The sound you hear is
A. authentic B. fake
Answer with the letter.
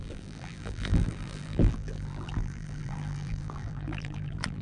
B